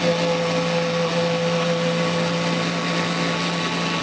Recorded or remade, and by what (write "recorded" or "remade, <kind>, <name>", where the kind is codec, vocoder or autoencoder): recorded